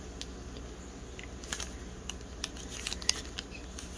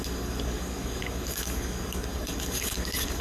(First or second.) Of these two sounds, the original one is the first